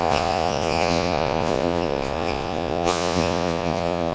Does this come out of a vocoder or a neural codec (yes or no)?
yes